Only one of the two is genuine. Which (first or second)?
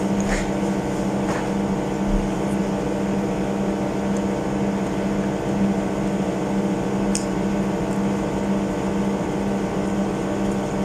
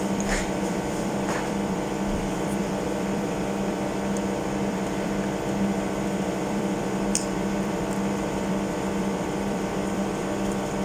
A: first